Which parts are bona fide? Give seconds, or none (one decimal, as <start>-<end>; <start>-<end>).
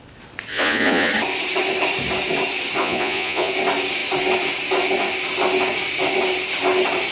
0.0-0.5; 1.1-2.8; 3.5-7.1